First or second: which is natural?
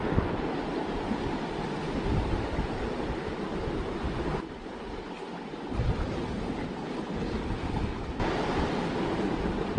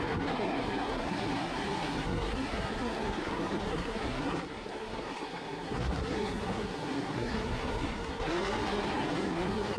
first